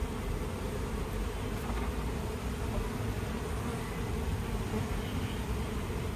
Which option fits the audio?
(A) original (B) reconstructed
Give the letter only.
A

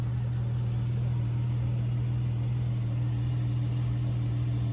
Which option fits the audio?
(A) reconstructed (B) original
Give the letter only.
B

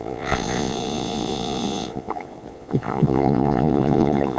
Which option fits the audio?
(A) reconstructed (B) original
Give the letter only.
A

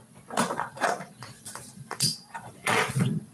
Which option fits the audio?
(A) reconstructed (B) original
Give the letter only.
A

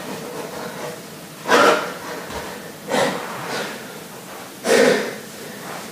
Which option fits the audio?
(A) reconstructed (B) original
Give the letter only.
B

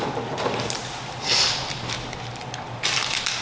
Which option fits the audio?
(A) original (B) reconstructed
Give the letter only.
A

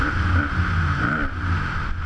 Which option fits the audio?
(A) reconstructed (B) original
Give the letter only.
B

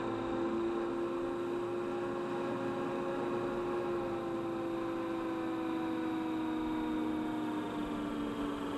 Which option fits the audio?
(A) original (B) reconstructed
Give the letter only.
A